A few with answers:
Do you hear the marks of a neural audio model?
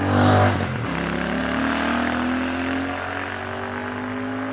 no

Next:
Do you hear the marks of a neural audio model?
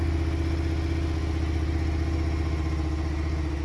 no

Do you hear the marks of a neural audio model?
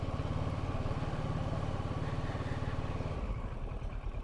no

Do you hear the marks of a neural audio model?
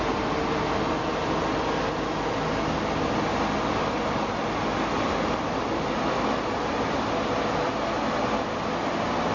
no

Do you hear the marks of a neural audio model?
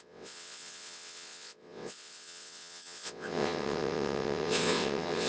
yes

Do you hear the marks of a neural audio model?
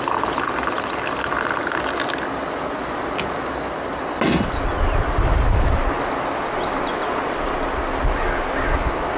no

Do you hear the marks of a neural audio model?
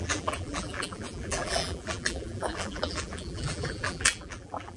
yes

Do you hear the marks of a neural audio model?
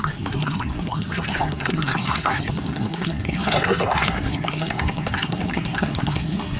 yes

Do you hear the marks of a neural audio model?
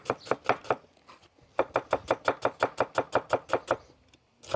no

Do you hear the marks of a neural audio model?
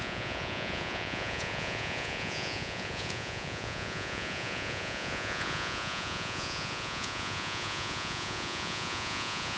yes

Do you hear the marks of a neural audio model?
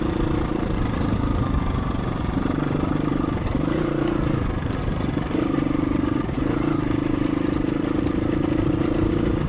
yes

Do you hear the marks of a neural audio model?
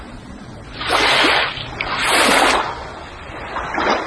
no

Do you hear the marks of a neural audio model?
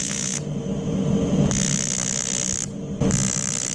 no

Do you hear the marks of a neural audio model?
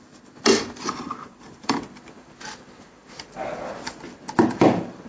yes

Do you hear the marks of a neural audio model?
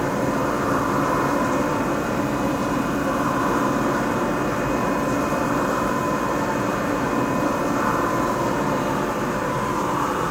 yes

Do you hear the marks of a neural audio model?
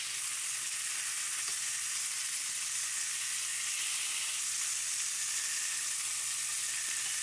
no